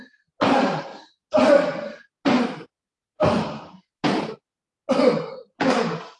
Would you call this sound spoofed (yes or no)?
no